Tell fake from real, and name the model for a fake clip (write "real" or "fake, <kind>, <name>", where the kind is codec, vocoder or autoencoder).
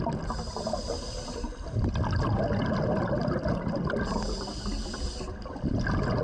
real